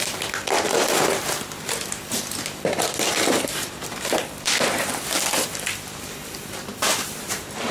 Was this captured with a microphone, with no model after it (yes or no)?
no